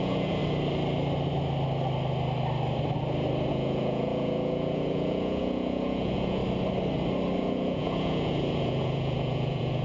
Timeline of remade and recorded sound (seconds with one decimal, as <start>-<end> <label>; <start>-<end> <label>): 0.0-0.4 remade; 0.4-3.5 recorded; 3.5-6.4 remade; 6.4-7.4 recorded; 7.4-9.8 remade